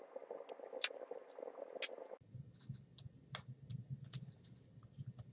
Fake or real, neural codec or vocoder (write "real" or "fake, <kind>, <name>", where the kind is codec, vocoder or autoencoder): real